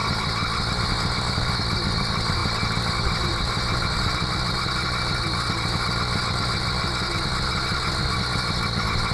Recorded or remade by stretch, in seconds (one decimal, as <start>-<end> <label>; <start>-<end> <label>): 0.0-9.1 recorded